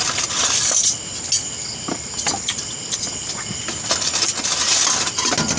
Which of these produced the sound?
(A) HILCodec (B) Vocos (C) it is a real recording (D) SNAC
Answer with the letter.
C